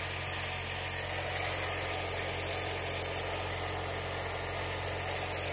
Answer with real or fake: real